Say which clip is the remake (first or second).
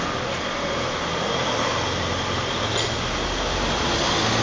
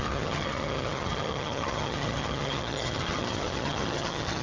second